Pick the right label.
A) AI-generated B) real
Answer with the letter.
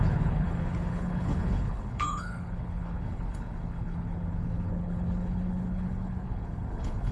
A